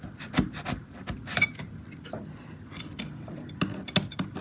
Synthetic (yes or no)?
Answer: no